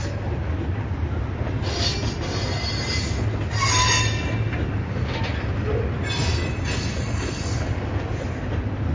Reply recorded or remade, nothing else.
recorded